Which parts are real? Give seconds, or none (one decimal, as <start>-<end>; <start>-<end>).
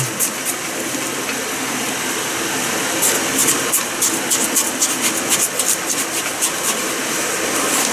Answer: 0.0-7.9